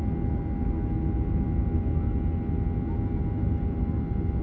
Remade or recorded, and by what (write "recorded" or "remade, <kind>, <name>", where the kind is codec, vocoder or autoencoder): recorded